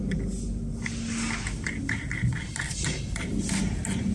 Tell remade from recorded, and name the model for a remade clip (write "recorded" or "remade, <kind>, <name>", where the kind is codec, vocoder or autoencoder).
recorded